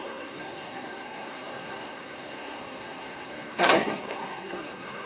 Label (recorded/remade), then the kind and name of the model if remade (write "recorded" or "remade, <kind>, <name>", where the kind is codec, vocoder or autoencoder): remade, codec, SNAC